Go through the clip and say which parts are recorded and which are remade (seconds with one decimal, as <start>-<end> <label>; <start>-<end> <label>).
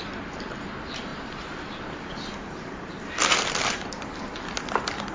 0.0-5.1 recorded